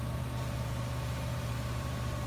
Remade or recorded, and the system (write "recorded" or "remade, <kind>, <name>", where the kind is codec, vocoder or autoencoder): remade, vocoder, BigVGAN v2